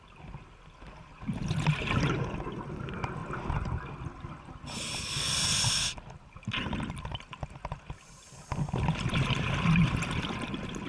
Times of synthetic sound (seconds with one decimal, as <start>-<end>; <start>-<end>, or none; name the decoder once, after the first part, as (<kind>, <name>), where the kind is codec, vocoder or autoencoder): none